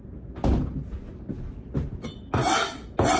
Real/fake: real